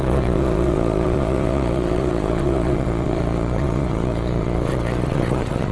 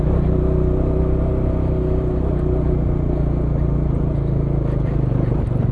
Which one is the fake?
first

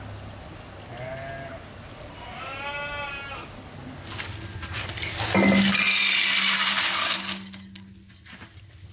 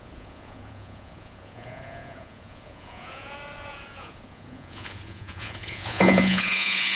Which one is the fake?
second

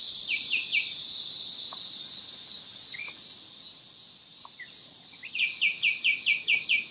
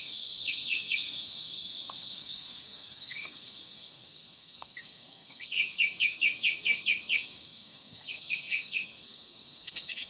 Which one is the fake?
second